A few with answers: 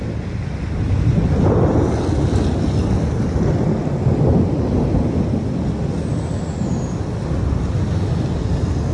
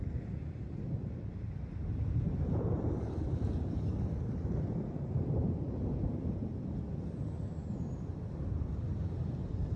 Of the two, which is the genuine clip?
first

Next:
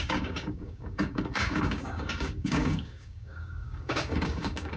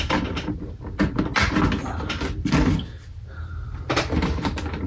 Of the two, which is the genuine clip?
second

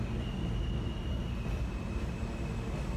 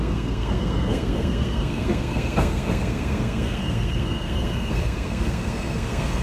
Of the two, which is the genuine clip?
first